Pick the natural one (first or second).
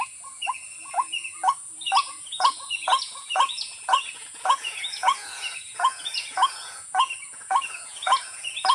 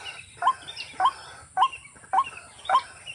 second